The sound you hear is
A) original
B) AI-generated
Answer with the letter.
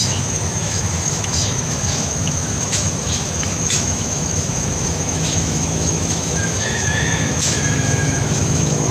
B